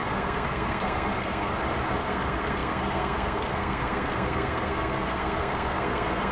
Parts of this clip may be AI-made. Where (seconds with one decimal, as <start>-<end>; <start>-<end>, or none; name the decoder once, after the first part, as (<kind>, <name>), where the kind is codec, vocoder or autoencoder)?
0.0-1.5 (codec, SNAC); 2.0-6.3